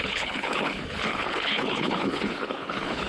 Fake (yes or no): yes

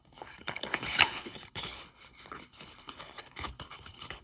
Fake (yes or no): yes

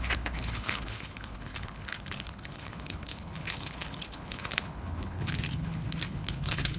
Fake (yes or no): yes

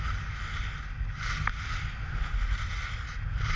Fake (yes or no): no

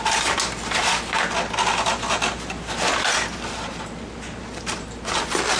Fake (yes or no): no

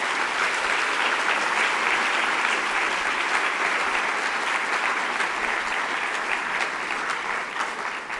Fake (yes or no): no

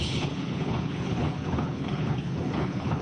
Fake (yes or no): yes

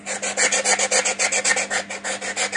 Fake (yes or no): no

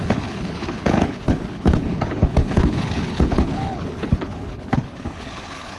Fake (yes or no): yes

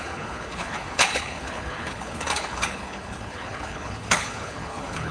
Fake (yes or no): yes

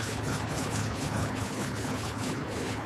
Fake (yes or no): yes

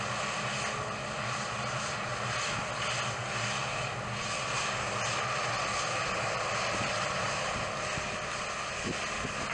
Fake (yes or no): no